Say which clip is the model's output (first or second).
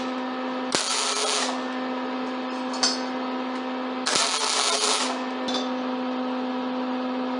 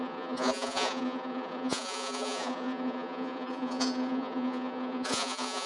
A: second